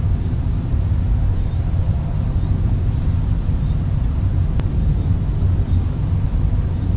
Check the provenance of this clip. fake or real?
real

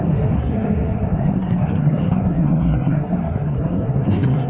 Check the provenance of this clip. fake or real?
fake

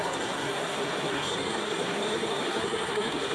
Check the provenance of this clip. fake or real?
fake